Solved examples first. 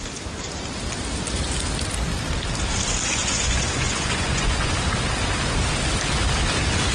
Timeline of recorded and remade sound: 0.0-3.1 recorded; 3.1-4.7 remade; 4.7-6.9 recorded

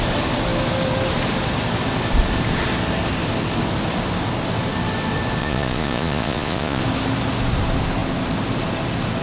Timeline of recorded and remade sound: 0.0-5.4 recorded; 5.4-6.8 remade; 6.8-9.2 recorded

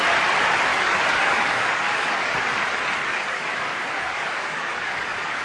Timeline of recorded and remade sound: 0.0-0.7 recorded; 0.7-2.4 remade; 2.4-3.0 recorded; 3.0-5.4 remade

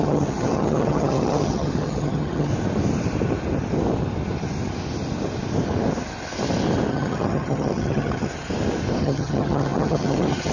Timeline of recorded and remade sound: 0.0-2.5 remade; 2.5-6.9 recorded; 6.9-8.3 remade; 8.3-9.0 recorded; 9.0-10.5 remade